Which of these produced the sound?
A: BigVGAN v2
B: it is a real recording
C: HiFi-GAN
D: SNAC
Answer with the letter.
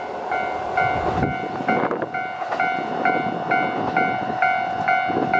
B